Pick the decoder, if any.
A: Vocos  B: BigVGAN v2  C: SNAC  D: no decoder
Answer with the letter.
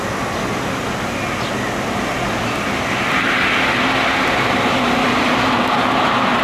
D